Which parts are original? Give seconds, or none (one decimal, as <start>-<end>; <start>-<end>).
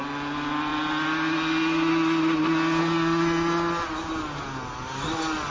0.0-5.5